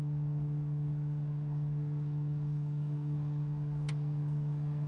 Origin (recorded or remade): remade